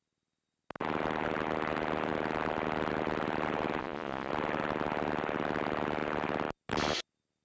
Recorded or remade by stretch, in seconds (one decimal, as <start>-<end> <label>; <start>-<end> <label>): 0.0-3.8 recorded; 3.8-4.3 remade; 4.3-7.4 recorded